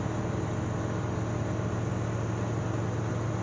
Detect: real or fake real